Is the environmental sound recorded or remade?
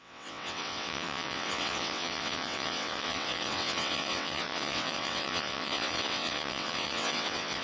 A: remade